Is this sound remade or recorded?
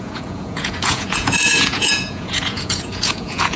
remade